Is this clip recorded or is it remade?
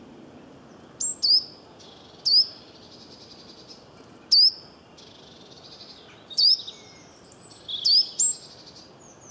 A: recorded